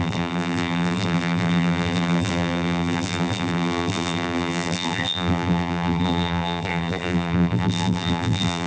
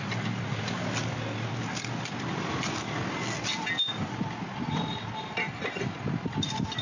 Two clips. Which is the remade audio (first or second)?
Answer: first